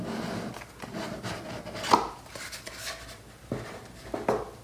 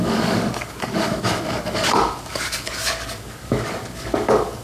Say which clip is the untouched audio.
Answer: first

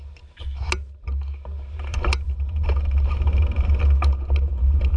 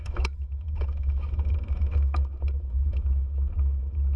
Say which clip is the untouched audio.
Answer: first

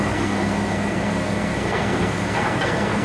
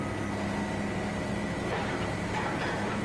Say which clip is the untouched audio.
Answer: second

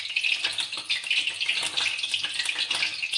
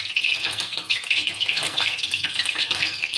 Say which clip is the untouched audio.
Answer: first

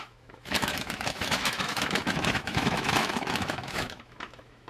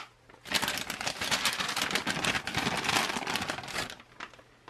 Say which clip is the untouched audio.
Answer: second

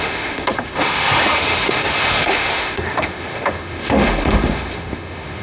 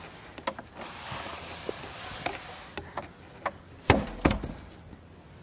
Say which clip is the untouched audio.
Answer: second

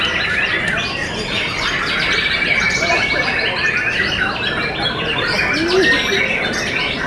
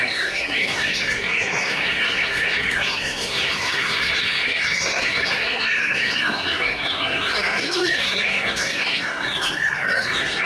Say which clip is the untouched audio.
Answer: first